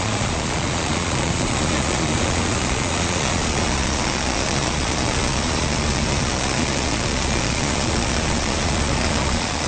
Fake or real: fake